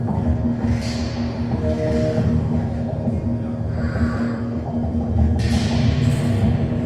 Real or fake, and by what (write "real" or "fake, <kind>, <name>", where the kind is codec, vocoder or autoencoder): real